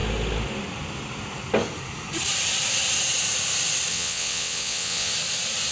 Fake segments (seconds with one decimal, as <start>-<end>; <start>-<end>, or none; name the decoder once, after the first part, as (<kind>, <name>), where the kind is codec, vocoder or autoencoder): 3.9-5.1 (vocoder, WaveNeXt)